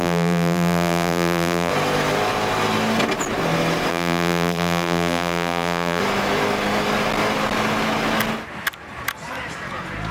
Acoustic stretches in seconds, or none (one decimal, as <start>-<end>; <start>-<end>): 1.7-3.9; 6.0-10.1